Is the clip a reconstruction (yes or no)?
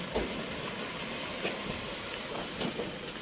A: no